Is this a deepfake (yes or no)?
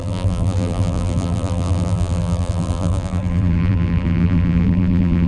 yes